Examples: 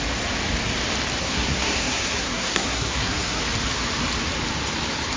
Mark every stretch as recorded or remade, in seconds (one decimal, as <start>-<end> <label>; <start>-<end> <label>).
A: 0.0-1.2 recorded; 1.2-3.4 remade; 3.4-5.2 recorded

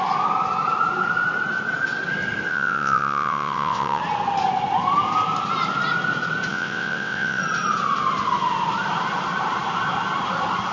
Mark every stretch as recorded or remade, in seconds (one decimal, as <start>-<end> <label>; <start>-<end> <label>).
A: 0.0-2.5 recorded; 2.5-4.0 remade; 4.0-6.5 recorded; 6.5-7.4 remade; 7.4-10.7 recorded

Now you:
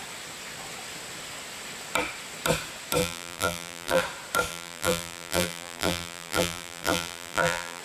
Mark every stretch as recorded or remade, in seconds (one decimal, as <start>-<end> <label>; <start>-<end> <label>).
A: 0.0-3.0 recorded; 3.0-4.0 remade; 4.0-4.5 recorded; 4.5-7.8 remade

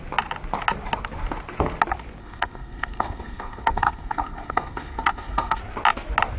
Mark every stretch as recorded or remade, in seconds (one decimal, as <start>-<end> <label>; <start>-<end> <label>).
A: 0.0-2.2 recorded; 2.2-5.6 remade; 5.6-6.4 recorded

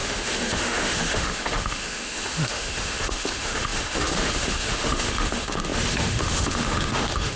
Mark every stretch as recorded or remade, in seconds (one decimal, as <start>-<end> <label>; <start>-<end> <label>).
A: 0.0-7.4 remade